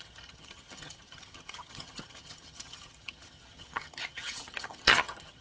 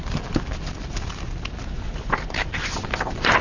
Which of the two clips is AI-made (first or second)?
first